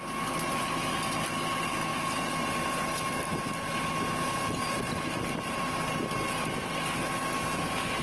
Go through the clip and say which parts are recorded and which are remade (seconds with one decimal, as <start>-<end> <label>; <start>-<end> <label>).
0.0-8.0 recorded